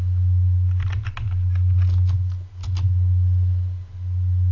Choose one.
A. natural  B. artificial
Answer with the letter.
A